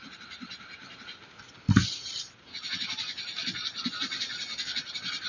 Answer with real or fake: real